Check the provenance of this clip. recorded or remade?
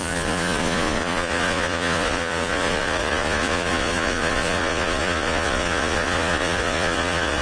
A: remade